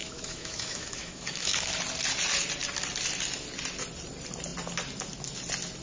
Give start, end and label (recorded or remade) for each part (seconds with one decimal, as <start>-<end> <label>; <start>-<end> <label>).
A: 0.0-1.7 remade; 1.7-5.8 recorded